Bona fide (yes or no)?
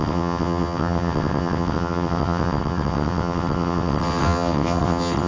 no